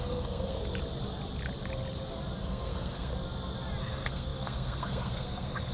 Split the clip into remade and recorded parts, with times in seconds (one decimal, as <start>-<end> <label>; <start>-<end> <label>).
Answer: 0.0-0.6 remade; 0.6-2.4 recorded; 2.4-3.1 remade; 3.1-3.8 recorded; 3.8-5.7 remade